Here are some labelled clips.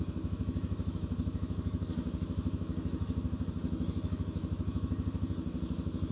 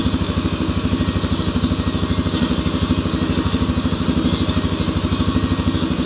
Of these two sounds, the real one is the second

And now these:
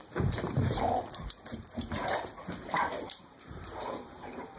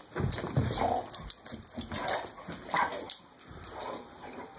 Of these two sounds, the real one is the second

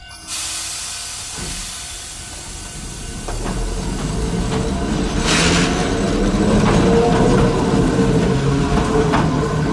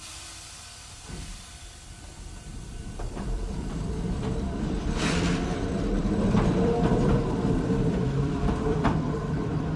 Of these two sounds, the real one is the first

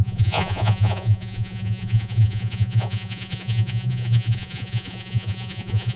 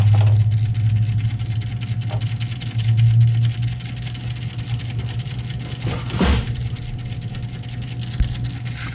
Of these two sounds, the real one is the second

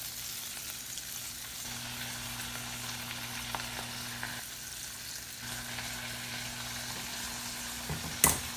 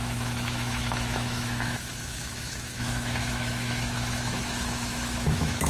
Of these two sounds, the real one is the first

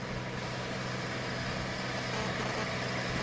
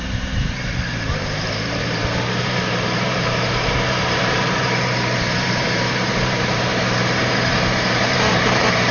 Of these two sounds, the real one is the first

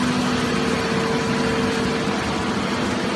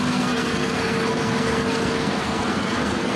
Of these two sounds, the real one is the first